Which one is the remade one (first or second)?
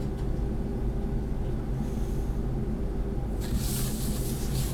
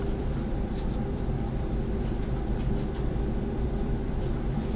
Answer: second